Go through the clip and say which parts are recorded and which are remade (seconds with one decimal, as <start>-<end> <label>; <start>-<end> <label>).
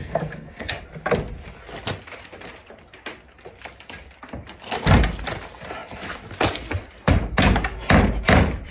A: 0.0-0.7 remade; 0.7-8.7 recorded